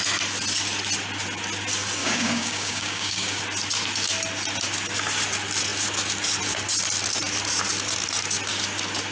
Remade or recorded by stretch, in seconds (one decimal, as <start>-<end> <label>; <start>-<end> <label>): 0.0-2.0 recorded; 2.0-3.4 remade; 3.4-9.1 recorded